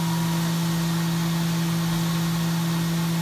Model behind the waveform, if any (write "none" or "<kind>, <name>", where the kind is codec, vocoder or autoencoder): none